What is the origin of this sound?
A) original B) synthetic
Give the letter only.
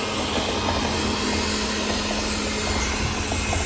A